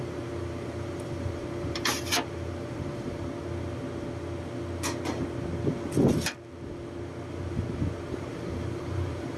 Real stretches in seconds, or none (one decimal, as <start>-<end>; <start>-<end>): 3.2-8.1